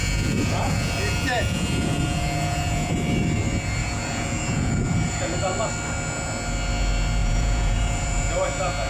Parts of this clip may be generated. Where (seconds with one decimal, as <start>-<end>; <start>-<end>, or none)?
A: 0.0-2.9; 3.8-5.4; 7.2-8.3